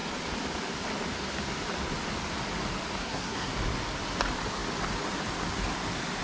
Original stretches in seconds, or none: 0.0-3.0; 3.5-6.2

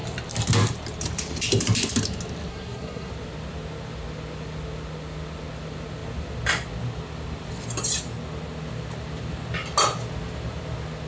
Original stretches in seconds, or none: 0.0-2.5; 3.1-11.1

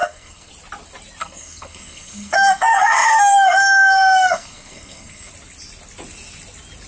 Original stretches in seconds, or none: 0.5-1.2; 5.3-6.9